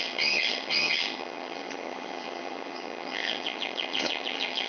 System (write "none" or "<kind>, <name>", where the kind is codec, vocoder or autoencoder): vocoder, HiFi-GAN